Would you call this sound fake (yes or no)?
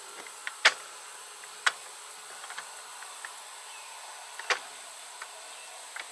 no